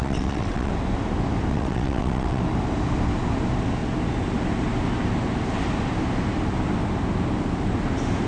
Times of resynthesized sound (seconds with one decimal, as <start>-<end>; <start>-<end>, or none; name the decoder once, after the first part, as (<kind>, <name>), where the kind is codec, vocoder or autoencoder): 0.0-0.7 (vocoder, WaveNeXt); 1.5-2.4